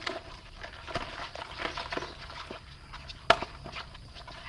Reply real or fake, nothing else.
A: real